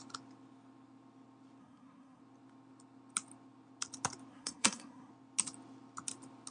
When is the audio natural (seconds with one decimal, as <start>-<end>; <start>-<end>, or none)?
0.0-1.6; 2.2-4.3; 5.1-6.5